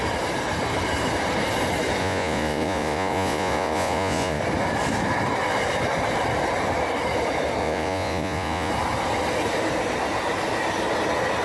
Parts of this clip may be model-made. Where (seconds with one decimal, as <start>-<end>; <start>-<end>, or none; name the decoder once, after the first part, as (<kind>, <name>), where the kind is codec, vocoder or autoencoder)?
2.0-4.4 (vocoder, Vocos); 7.6-8.7